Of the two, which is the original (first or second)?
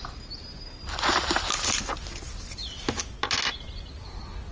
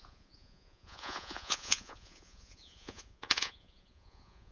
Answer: first